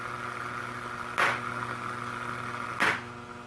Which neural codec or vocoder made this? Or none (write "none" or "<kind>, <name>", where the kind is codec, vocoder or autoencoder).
none